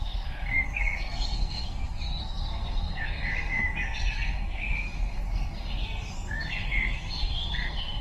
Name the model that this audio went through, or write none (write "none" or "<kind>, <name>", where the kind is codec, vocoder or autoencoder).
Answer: codec, SNAC